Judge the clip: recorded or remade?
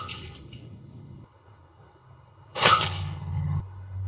remade